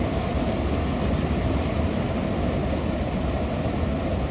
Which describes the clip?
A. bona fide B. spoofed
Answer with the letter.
A